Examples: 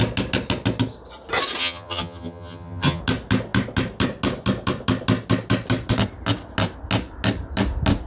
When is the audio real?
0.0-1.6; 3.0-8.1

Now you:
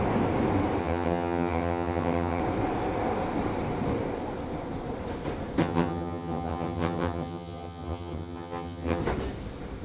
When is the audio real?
0.0-0.8; 2.4-5.6; 9.0-9.8

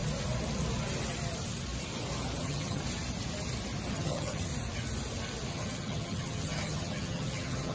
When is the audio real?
0.0-2.4; 2.8-3.9; 4.5-5.5

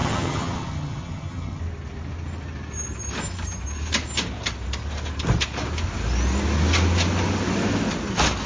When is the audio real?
1.6-8.5

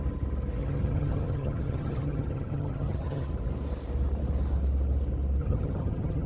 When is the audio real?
0.0-0.6; 3.3-5.4

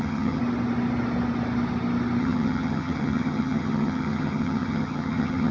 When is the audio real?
0.4-2.2